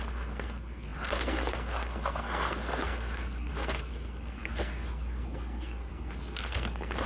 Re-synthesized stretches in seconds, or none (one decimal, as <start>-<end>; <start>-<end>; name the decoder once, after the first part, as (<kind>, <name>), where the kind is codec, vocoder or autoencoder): 0.0-7.1 (codec, SNAC)